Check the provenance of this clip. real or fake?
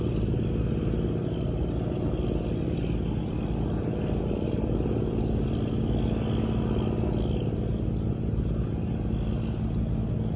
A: real